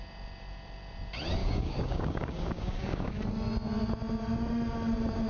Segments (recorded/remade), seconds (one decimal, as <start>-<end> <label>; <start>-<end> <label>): 0.0-1.4 recorded; 1.4-3.2 remade; 3.2-5.3 recorded